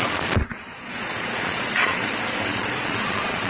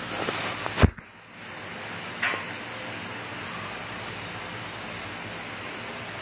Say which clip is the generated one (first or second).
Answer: first